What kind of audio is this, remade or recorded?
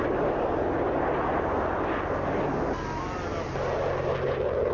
recorded